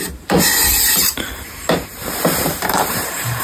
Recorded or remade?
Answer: remade